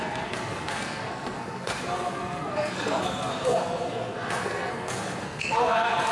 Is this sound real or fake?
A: fake